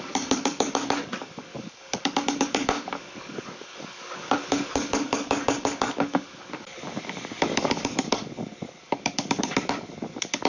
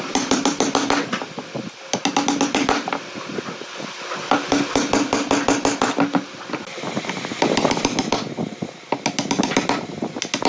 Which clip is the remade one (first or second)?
first